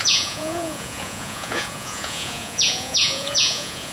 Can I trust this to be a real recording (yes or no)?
no